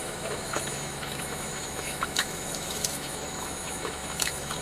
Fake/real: fake